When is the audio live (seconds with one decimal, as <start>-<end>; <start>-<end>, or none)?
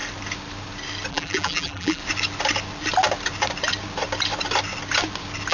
0.0-1.1; 2.0-5.5